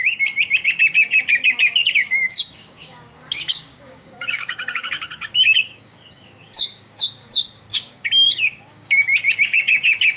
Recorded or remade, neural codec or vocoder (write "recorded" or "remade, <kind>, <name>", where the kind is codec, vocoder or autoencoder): remade, codec, DAC